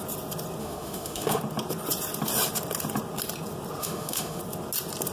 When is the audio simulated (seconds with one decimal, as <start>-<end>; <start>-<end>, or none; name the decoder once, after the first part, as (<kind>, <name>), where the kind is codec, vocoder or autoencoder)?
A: 0.6-1.4 (autoencoder, DAC-VAE); 3.8-4.4